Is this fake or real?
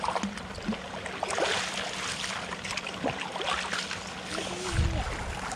real